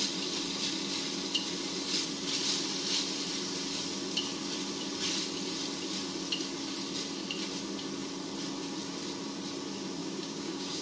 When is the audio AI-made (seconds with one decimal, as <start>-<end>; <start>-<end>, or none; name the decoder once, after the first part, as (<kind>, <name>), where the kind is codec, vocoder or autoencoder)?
10.0-10.8 (codec, DAC)